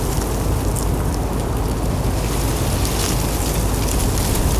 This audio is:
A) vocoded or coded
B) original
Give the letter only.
B